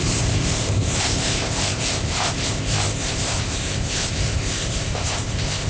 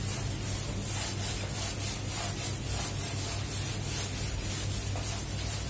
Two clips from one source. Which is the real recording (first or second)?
second